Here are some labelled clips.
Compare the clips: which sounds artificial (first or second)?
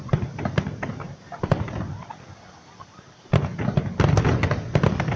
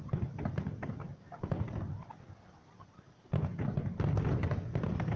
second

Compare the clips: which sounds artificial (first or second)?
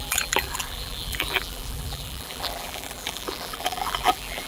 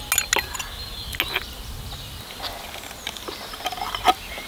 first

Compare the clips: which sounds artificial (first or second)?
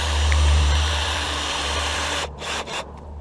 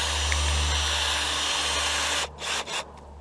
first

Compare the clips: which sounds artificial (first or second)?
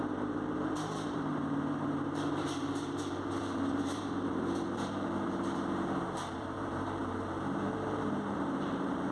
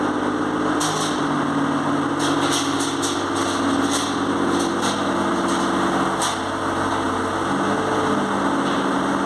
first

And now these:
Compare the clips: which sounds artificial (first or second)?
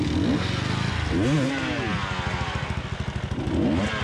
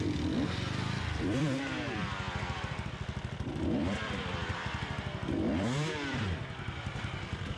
second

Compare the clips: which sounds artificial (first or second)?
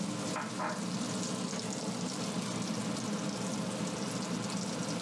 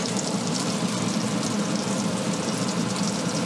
second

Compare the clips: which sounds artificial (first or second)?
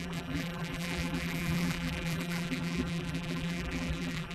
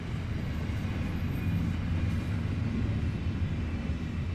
first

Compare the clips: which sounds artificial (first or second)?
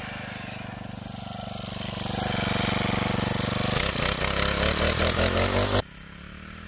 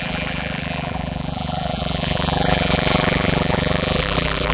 second